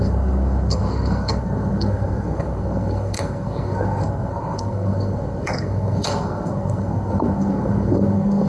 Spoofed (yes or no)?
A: yes